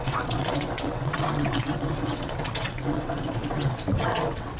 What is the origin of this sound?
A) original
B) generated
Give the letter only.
B